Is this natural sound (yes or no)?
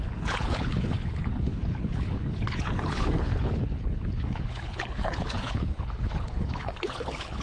no